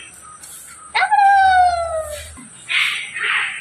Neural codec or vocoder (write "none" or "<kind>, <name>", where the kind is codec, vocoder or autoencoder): none